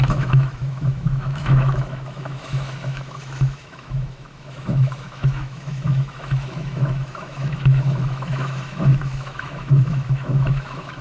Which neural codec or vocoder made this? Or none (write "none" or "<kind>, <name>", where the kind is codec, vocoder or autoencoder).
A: autoencoder, DAC-VAE